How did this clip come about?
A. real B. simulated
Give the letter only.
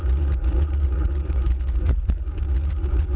B